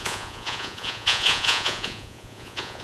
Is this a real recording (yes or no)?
no